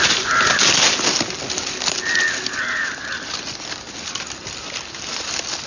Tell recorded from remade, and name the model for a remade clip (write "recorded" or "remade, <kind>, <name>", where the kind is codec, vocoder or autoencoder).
recorded